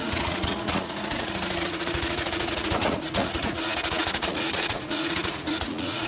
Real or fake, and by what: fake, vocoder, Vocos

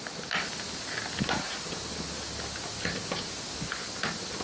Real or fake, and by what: real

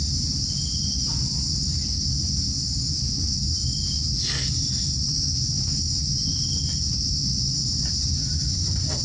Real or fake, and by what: real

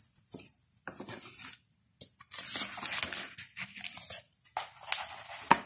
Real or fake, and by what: real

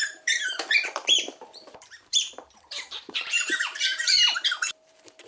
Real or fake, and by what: fake, vocoder, BigVGAN v2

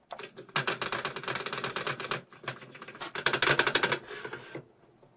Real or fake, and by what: real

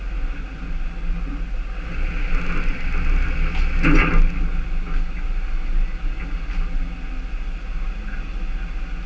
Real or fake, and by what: real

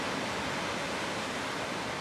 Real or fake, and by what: real